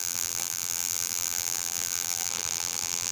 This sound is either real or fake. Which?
fake